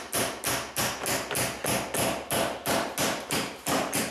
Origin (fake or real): real